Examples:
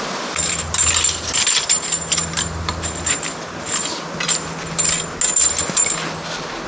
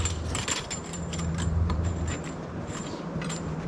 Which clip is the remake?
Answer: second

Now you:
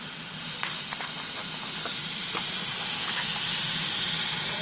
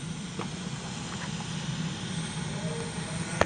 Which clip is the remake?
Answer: first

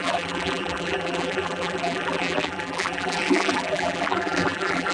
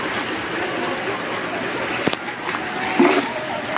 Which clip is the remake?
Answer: first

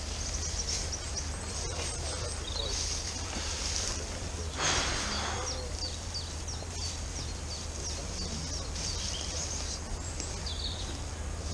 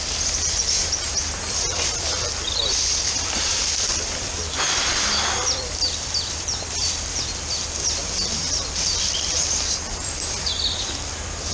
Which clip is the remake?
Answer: second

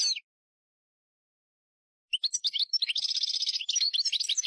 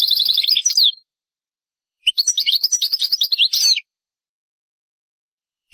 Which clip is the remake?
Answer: second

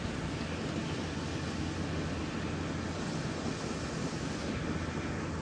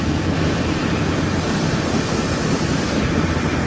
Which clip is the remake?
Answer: second